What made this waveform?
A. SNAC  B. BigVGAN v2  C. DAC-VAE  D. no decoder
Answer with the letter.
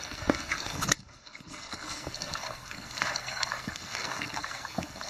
A